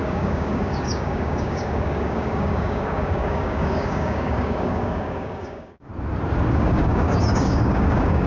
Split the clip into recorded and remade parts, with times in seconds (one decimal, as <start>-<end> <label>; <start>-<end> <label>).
0.0-5.9 remade; 5.9-6.5 recorded; 6.5-8.3 remade